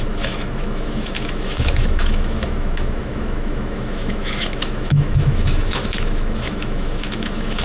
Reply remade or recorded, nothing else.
remade